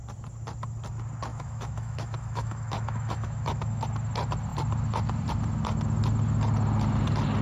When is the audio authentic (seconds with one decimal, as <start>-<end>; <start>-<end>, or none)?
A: 0.0-1.3; 3.8-7.4